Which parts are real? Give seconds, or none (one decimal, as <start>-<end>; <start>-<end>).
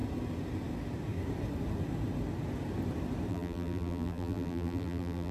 0.0-3.3